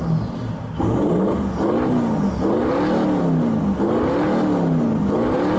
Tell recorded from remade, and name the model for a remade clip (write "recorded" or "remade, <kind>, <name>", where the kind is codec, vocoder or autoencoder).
recorded